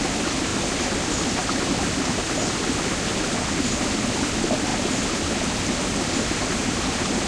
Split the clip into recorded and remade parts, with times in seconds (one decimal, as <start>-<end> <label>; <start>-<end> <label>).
0.0-7.3 recorded